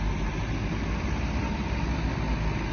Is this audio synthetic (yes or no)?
no